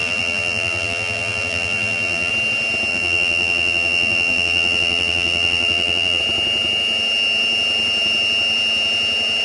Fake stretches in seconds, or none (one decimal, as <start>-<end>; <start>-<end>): 0.0-2.3; 2.9-6.2